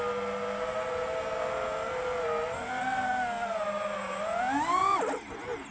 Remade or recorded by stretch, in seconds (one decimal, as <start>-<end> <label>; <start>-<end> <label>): 0.0-5.7 recorded